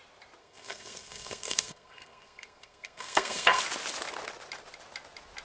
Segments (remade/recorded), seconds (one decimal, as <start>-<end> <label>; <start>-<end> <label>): 0.0-0.4 recorded; 0.4-3.6 remade; 3.6-5.4 recorded